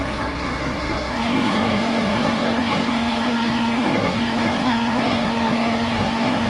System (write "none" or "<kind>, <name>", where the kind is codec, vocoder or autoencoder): codec, SNAC